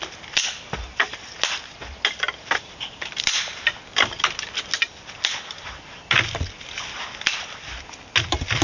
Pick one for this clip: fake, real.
real